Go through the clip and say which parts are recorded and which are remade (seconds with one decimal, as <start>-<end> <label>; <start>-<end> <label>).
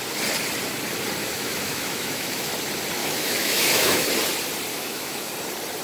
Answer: 0.0-1.2 recorded; 1.2-2.5 remade; 2.5-3.0 recorded; 3.0-4.1 remade; 4.1-4.7 recorded; 4.7-5.3 remade; 5.3-5.8 recorded